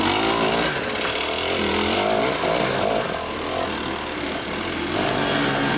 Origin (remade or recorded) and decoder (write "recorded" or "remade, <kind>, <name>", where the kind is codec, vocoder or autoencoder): recorded